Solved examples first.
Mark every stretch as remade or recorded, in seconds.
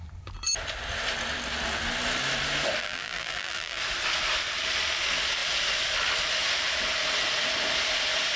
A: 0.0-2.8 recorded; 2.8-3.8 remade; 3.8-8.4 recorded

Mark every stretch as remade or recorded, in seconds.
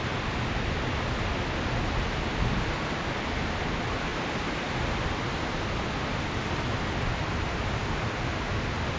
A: 0.0-9.0 recorded